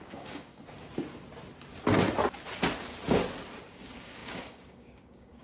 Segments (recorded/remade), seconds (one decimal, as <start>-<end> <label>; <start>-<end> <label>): 0.0-0.5 remade; 0.5-3.7 recorded; 3.7-5.4 remade